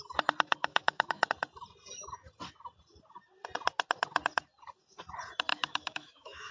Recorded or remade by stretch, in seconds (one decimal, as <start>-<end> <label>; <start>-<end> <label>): 0.0-0.6 recorded; 0.6-1.3 remade; 1.3-5.5 recorded; 5.5-6.5 remade